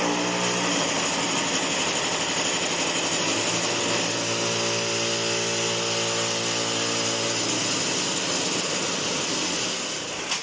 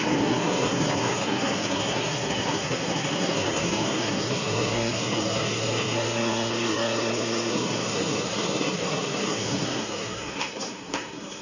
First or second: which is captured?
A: first